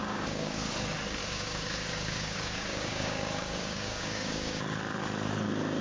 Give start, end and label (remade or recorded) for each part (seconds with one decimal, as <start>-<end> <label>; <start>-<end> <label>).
0.0-0.7 remade; 0.7-1.2 recorded; 1.2-4.6 remade; 4.6-5.8 recorded